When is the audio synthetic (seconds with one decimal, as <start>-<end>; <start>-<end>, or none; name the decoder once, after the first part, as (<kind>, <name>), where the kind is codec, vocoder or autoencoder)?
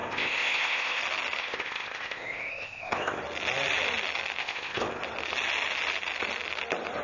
0.0-1.0 (codec, ZipCodec); 1.4-3.2; 4.4-5.0